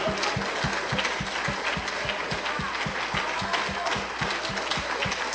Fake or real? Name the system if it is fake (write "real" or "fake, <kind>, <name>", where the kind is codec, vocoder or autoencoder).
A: real